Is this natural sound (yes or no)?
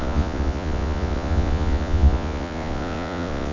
no